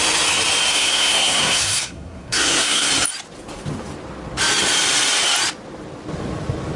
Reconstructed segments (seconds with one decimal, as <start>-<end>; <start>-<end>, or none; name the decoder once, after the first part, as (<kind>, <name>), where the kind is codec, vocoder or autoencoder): 0.7-2.9 (codec, SNAC)